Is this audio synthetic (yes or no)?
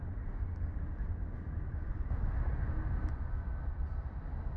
no